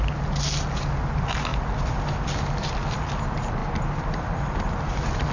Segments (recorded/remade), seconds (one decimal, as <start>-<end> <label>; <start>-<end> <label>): 0.0-5.3 recorded

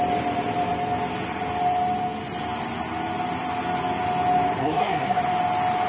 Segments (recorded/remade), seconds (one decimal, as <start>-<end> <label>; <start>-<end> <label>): 0.0-4.6 recorded; 4.6-5.2 remade; 5.2-5.9 recorded

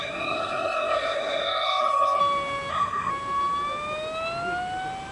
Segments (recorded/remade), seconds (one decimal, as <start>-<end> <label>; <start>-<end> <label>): 0.0-2.2 remade; 2.2-2.7 recorded; 2.7-3.1 remade; 3.1-5.1 recorded

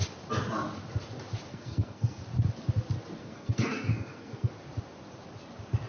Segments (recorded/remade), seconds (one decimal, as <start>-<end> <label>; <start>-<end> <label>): 0.0-1.5 recorded; 1.5-2.2 remade; 2.2-3.2 recorded; 3.2-4.5 remade; 4.5-5.9 recorded

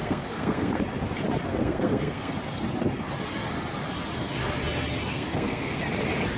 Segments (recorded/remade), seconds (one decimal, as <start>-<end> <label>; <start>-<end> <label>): 0.0-0.8 remade; 0.8-1.5 recorded; 1.5-2.3 remade; 2.3-5.1 recorded; 5.1-5.8 remade; 5.8-6.4 recorded

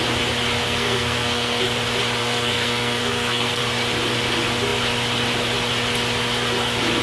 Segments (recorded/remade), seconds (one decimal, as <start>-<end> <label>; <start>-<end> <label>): 0.0-0.6 recorded; 0.6-1.6 remade; 1.6-2.2 recorded; 2.2-3.6 remade; 3.6-7.0 recorded